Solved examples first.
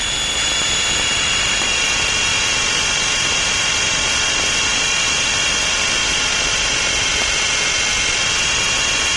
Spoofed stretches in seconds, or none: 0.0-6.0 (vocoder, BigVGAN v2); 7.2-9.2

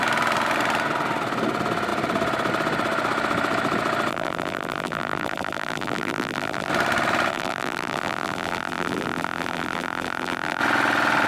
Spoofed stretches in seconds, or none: 4.1-6.7 (vocoder, BigVGAN v2); 7.3-10.6

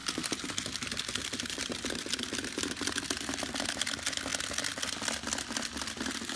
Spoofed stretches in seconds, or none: none

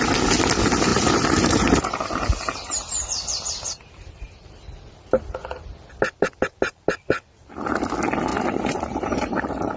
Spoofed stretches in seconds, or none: 0.9-4.5 (vocoder, BigVGAN v2); 8.3-9.8

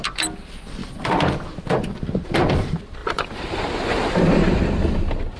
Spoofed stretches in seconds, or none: 3.0-4.7 (vocoder, BigVGAN v2)